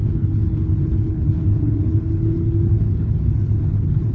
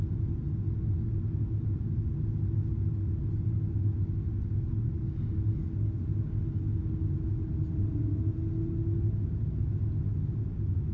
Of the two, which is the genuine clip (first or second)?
second